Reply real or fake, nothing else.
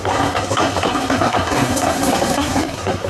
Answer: fake